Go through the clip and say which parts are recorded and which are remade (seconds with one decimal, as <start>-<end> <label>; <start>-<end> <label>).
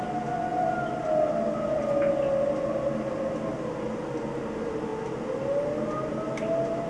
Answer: 0.0-6.9 recorded